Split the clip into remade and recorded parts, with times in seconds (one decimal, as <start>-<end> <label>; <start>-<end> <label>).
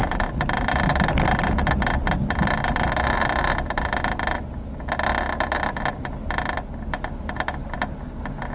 0.0-8.5 recorded